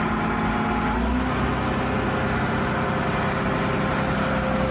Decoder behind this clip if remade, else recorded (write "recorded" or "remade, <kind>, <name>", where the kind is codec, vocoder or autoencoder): recorded